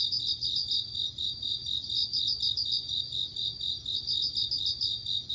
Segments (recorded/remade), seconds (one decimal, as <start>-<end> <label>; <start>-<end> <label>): 0.0-2.0 remade; 2.0-5.3 recorded

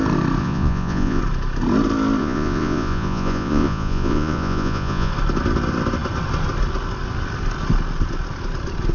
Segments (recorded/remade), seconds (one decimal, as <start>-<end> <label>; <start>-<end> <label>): 0.0-0.4 recorded; 0.4-1.2 remade; 1.2-2.2 recorded; 2.2-5.1 remade; 5.1-8.9 recorded